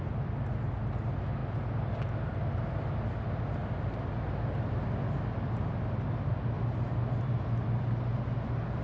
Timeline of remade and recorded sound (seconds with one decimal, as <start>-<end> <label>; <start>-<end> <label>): 0.0-8.8 recorded